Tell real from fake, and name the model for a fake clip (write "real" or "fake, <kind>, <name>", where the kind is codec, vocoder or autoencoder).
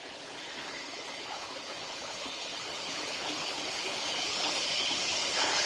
fake, codec, HILCodec